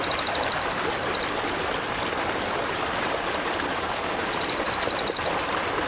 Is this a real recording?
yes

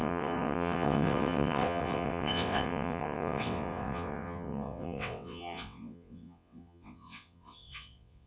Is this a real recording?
no